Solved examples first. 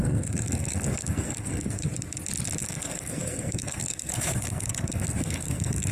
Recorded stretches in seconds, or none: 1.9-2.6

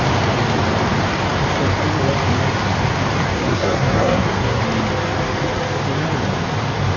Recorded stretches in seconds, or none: 0.0-3.3; 4.6-7.0

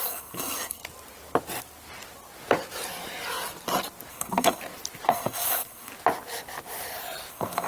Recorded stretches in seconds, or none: 0.8-4.1; 4.6-5.1; 5.9-7.3

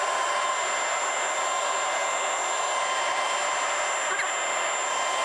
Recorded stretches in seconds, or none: 0.0-5.2